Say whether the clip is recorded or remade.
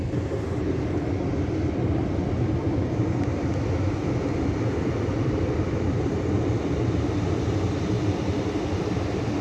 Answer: recorded